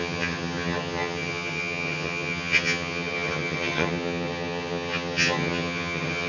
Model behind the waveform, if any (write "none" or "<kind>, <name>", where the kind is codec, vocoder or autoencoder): vocoder, HiFi-GAN